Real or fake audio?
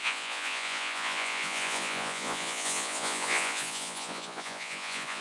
fake